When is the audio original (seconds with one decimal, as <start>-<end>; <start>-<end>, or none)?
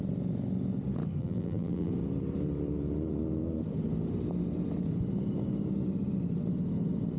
0.0-1.2; 1.9-7.2